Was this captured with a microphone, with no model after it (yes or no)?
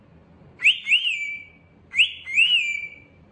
yes